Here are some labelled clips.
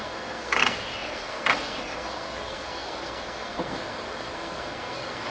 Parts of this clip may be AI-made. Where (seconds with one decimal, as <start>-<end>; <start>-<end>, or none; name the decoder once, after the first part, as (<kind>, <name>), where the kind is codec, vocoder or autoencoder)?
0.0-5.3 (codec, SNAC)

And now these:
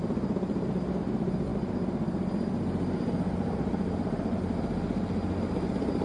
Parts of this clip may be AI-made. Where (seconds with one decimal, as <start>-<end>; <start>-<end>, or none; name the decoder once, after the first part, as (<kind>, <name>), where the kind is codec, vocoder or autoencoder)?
none

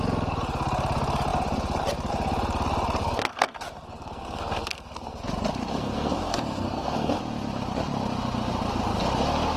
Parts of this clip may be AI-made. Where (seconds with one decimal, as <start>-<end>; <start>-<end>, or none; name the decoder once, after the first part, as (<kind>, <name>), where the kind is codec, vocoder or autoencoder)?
3.0-5.2 (codec, SNAC); 5.7-7.2

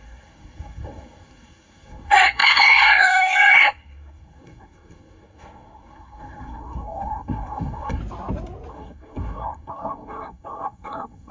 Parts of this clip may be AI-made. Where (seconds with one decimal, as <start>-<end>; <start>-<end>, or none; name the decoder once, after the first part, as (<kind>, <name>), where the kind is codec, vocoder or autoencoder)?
0.0-8.0 (codec, SNAC); 8.7-11.3

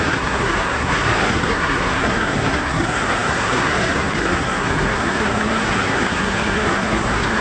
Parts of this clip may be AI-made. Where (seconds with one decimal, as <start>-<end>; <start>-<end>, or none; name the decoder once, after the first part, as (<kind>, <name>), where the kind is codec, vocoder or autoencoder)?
0.0-7.4 (codec, SNAC)

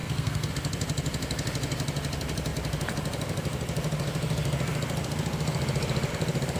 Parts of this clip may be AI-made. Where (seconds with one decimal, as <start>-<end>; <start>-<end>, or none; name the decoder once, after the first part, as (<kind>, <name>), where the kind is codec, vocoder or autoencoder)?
0.0-0.5 (codec, SNAC)

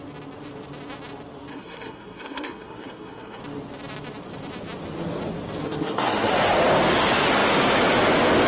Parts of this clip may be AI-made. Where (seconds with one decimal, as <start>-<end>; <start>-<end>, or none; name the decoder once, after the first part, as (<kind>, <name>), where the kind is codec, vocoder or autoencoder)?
1.5-3.4 (codec, SNAC); 5.6-6.3

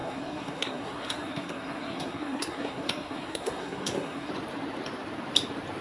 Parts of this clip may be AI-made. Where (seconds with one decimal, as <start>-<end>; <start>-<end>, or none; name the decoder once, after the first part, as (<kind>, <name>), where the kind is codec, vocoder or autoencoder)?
0.0-4.3 (codec, SNAC)